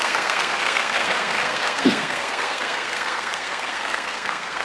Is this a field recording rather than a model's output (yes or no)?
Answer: no